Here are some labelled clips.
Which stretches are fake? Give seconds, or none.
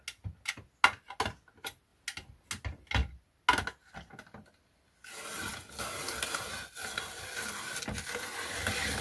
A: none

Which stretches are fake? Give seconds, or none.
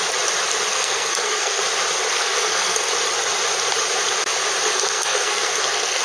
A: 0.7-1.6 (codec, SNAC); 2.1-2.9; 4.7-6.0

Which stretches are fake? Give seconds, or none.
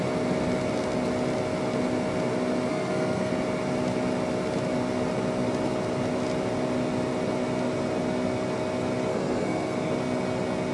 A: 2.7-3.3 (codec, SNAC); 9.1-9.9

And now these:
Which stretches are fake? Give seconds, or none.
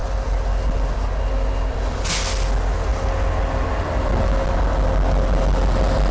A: none